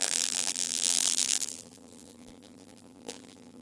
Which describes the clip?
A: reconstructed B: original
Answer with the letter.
A